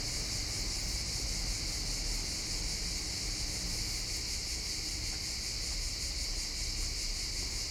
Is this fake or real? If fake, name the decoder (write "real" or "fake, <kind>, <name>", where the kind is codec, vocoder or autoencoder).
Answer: real